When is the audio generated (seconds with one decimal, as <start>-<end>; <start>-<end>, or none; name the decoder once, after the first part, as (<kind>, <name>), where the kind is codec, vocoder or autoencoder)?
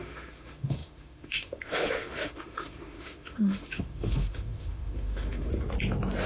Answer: 0.0-5.5 (autoencoder, DAC-VAE)